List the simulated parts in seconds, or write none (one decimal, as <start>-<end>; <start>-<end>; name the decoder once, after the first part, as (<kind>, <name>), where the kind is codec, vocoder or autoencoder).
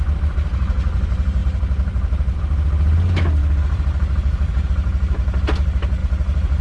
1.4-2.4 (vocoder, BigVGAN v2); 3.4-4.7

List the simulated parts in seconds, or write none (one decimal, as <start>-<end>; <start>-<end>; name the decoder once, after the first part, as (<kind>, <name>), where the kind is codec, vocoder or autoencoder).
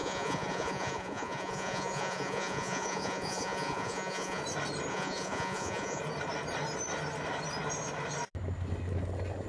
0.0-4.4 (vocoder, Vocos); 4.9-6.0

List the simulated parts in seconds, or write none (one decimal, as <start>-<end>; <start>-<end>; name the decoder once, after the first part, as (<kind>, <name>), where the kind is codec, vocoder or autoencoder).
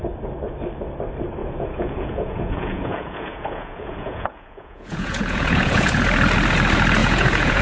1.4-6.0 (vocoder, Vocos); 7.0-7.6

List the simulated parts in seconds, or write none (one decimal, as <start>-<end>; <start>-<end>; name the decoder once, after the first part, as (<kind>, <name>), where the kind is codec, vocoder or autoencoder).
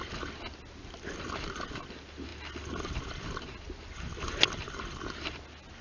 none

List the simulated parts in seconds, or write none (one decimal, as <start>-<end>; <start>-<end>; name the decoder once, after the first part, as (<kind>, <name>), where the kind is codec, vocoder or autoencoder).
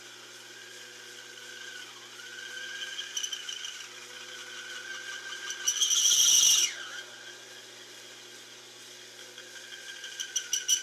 none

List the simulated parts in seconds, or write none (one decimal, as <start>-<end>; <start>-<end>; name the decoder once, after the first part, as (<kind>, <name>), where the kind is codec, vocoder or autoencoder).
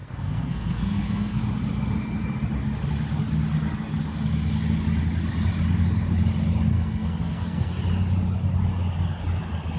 0.0-1.4 (codec, SNAC); 6.7-7.7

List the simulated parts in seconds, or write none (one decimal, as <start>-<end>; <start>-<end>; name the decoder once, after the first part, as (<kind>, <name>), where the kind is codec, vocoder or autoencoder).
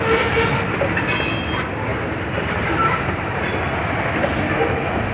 1.9-3.5 (vocoder, BigVGAN v2)